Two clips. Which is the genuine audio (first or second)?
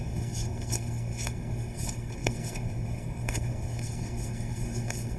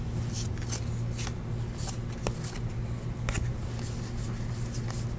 second